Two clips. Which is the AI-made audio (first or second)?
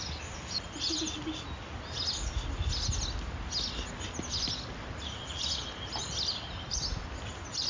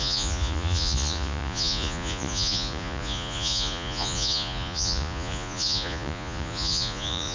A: second